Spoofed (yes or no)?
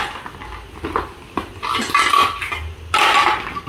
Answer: no